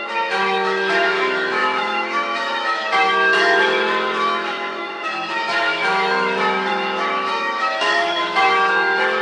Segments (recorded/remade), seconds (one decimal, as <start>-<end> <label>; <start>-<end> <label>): 0.0-9.2 remade